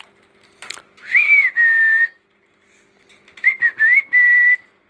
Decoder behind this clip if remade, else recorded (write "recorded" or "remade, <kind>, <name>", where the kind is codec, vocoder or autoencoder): recorded